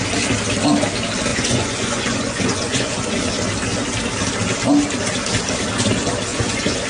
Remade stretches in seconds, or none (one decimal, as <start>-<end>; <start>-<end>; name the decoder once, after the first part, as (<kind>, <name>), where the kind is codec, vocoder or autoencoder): 1.3-3.1 (vocoder, Vocos); 6.3-6.9